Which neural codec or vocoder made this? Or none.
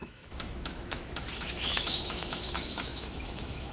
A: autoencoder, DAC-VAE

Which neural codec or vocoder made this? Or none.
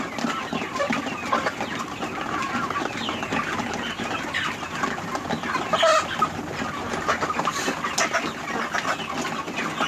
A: none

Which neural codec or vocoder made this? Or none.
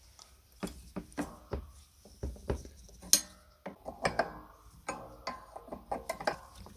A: none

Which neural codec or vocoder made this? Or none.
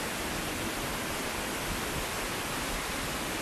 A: none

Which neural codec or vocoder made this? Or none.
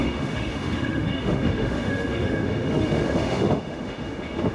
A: autoencoder, DAC-VAE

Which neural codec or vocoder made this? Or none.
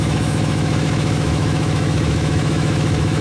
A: autoencoder, DAC-VAE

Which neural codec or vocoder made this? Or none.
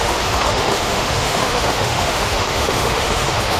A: autoencoder, DAC-VAE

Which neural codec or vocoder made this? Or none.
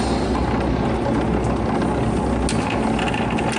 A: none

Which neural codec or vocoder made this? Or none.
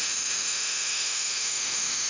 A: autoencoder, DAC-VAE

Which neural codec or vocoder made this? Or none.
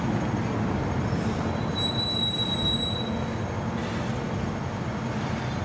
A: none